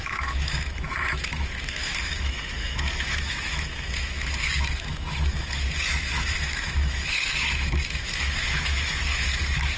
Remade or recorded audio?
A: remade